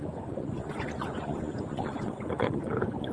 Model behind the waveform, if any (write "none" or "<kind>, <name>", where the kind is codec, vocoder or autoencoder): vocoder, Vocos